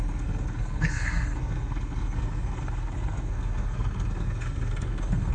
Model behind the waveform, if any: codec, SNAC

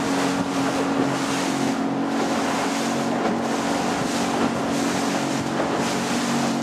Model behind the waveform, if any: none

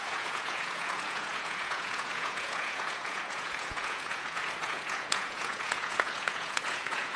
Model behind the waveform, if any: vocoder, Vocos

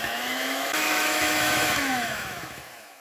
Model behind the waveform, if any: autoencoder, DAC-VAE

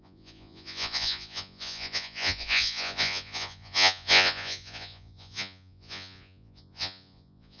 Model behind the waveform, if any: vocoder, Vocos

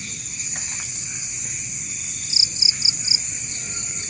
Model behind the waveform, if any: none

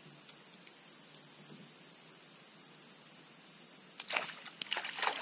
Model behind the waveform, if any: none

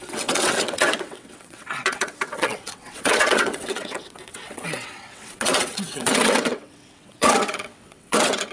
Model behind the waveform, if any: vocoder, WaveNeXt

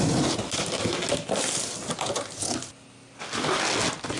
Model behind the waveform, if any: none